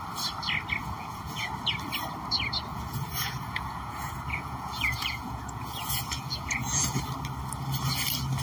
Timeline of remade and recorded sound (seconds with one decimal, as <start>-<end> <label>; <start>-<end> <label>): 0.0-0.8 recorded; 0.8-1.5 remade; 1.5-2.7 recorded; 2.7-7.0 remade; 7.0-8.4 recorded